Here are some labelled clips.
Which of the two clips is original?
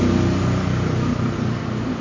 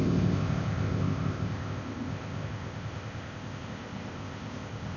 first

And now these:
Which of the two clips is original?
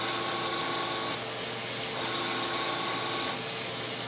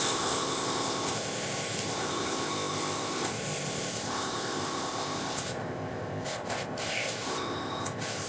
first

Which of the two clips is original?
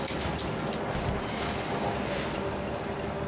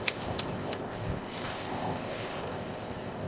first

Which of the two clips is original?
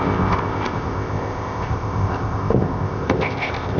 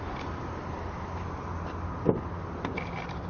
second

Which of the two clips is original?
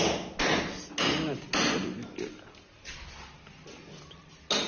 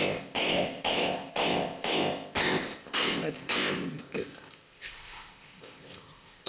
first